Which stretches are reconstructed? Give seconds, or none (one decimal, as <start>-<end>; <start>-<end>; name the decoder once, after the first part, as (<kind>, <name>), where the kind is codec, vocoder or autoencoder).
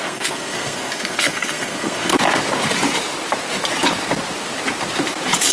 0.0-2.1 (codec, SNAC)